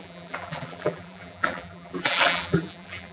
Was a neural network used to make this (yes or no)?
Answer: yes